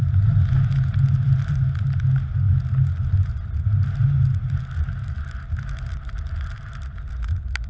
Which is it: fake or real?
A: real